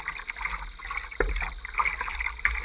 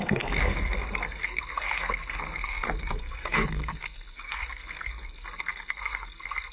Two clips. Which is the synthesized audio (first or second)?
second